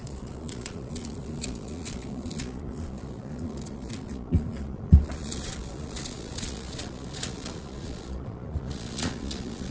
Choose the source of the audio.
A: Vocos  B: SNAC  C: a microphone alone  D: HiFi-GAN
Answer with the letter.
A